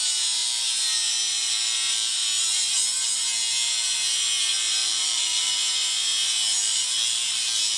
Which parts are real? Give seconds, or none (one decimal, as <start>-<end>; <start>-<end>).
0.0-4.8; 5.5-7.8